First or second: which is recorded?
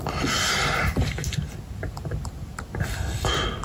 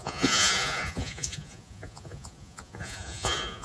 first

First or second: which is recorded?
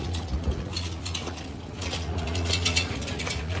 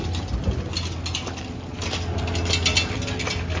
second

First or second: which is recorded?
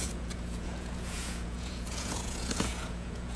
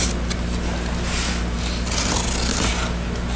second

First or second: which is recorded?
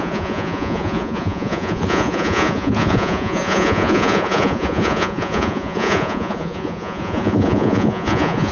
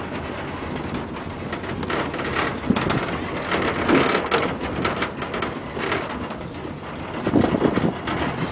second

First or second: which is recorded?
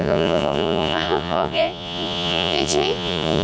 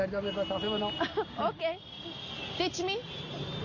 second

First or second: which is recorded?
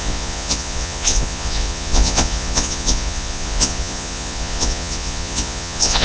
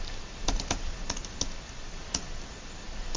second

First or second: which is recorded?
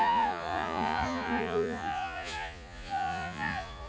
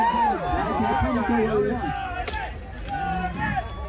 second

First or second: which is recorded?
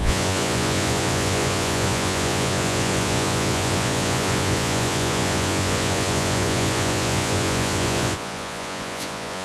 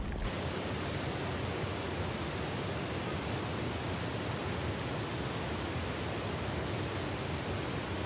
second